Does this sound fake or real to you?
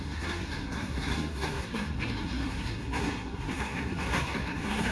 fake